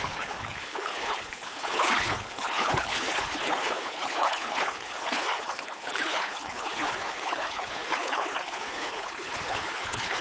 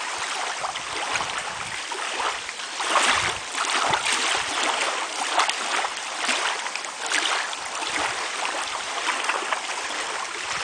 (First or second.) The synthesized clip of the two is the first